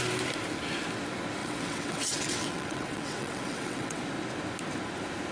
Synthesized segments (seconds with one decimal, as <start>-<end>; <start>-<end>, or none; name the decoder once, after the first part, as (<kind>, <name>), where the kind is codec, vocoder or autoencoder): 1.4-4.0 (vocoder, WaveNeXt)